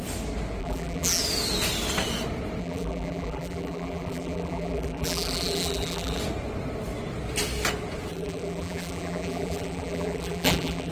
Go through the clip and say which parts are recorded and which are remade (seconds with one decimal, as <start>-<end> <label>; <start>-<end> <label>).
0.0-0.6 recorded; 0.6-1.2 remade; 1.2-2.6 recorded; 2.6-6.2 remade; 6.2-8.1 recorded; 8.1-10.9 remade